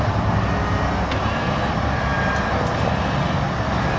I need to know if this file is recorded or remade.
recorded